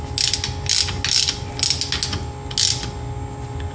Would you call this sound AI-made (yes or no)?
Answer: no